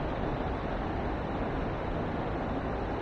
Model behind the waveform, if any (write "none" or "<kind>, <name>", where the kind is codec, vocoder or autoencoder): none